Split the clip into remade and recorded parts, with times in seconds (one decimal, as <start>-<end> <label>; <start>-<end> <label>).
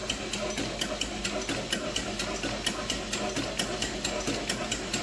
0.0-5.0 recorded